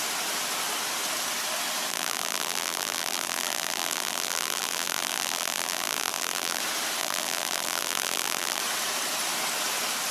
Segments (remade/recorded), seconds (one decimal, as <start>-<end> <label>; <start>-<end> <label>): 0.0-1.9 recorded; 1.9-6.6 remade; 6.6-7.0 recorded; 7.0-8.6 remade; 8.6-10.1 recorded